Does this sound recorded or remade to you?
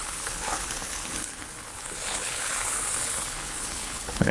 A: remade